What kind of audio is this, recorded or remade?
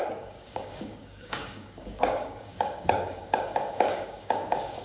remade